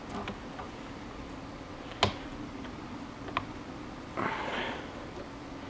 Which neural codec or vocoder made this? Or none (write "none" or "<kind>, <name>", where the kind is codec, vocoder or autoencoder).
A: none